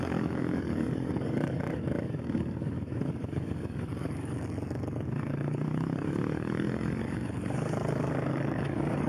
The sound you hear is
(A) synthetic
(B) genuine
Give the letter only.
A